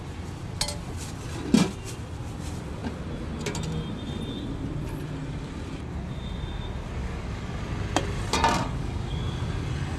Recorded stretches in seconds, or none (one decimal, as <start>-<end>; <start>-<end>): 0.0-7.0; 7.6-8.6; 9.2-10.0

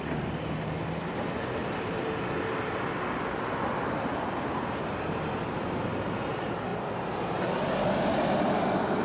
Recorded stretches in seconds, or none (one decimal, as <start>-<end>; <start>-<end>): 0.0-9.0

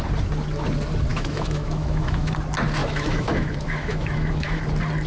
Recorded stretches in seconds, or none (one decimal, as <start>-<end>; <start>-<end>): 0.0-1.1; 2.3-2.8; 4.6-5.1

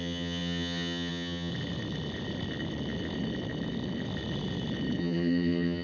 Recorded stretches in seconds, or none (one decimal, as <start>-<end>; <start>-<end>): 1.5-5.0